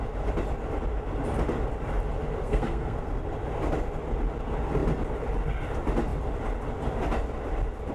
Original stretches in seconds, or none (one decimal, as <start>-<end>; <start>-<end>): 0.0-2.4; 3.2-7.9